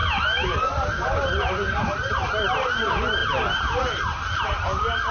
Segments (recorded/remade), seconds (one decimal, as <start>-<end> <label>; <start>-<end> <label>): 0.0-0.7 remade; 0.7-5.1 recorded